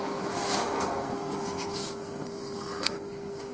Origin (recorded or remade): remade